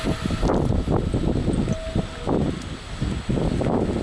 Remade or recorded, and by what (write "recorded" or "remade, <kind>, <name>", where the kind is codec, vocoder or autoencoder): recorded